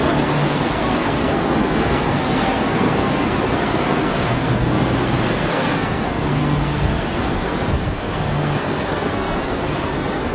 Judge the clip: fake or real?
fake